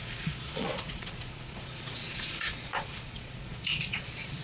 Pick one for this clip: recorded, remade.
remade